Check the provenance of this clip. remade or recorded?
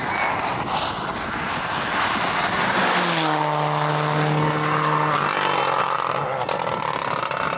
recorded